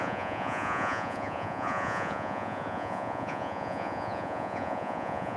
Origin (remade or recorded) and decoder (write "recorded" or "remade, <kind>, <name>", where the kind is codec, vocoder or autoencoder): remade, vocoder, Vocos